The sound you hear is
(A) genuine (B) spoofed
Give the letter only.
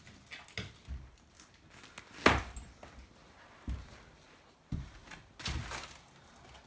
A